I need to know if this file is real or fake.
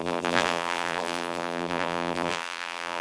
fake